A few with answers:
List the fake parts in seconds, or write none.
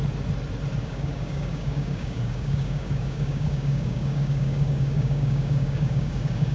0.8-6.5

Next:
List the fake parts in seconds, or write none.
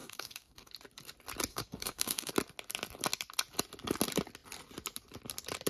0.0-0.7; 1.5-2.3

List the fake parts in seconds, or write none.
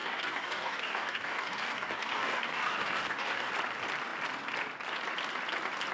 0.0-3.5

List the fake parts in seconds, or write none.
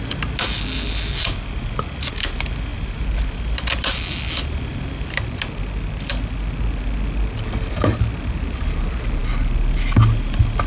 none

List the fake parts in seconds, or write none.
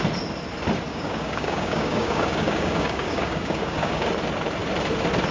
0.9-4.1